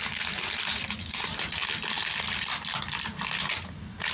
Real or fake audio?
real